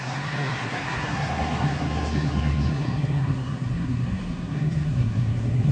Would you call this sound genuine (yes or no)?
no